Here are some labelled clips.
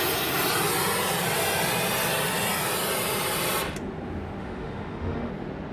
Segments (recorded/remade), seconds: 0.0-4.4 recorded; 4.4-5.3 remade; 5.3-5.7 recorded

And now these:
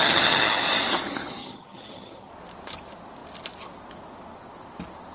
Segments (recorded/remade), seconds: 0.0-0.6 remade; 0.6-1.4 recorded; 1.4-2.3 remade; 2.3-5.1 recorded

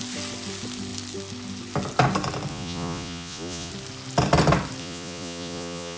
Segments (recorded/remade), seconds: 0.0-2.5 recorded; 2.5-3.7 remade; 3.7-4.8 recorded; 4.8-6.0 remade